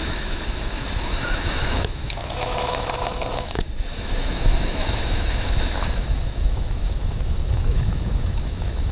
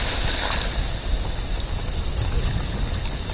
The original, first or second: second